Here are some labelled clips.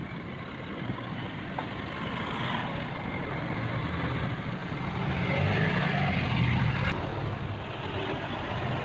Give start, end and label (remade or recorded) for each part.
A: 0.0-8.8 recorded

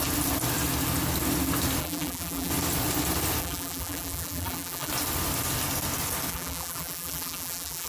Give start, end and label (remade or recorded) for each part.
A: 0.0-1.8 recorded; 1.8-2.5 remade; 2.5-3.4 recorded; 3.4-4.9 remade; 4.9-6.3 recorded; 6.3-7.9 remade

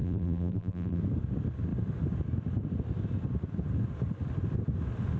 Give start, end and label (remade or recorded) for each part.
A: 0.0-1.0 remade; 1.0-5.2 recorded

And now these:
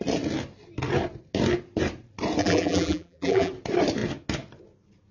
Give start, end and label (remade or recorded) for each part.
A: 0.0-2.4 recorded; 2.4-3.5 remade; 3.5-5.1 recorded

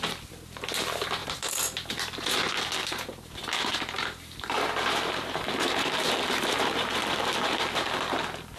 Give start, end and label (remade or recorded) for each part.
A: 0.0-1.2 recorded; 1.2-2.4 remade; 2.4-2.8 recorded; 2.8-3.3 remade; 3.3-3.7 recorded; 3.7-6.9 remade; 6.9-8.6 recorded

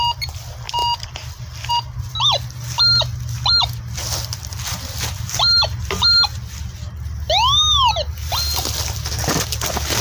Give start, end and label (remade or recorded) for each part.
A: 0.0-10.0 recorded

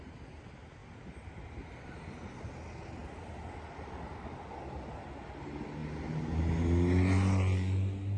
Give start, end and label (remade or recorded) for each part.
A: 0.0-8.2 recorded

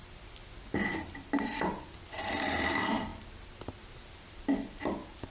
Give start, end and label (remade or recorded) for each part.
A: 0.0-0.4 remade; 0.4-1.0 recorded; 1.0-5.3 remade